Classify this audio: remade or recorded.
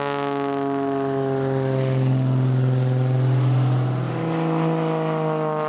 recorded